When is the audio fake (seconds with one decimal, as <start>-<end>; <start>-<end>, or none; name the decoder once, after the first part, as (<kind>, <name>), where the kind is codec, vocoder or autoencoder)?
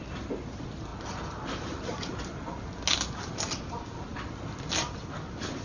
none